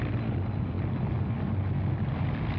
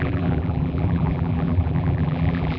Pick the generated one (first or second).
second